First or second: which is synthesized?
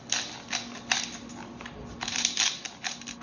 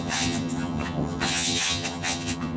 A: second